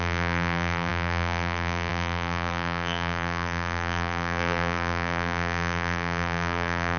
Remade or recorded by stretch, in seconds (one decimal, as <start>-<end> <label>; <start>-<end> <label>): 0.0-7.0 remade